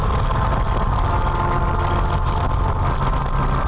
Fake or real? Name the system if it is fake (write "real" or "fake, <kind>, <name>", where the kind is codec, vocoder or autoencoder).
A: real